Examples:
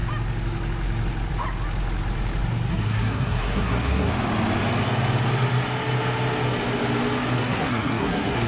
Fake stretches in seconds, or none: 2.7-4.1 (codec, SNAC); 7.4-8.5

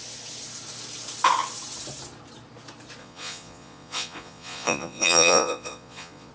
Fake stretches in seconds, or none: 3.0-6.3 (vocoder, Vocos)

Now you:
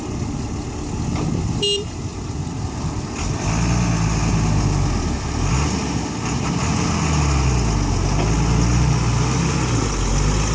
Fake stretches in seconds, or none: none

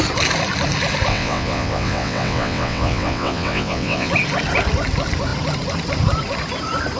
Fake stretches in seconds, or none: 1.1-4.1 (vocoder, WaveNeXt)